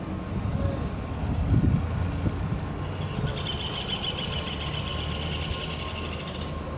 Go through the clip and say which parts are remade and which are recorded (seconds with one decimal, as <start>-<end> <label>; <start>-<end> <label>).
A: 0.0-6.8 recorded